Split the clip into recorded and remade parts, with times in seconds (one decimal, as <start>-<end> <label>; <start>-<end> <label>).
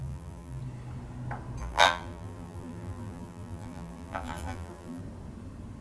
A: 0.0-0.6 remade; 0.6-1.6 recorded; 1.6-5.0 remade; 5.0-5.8 recorded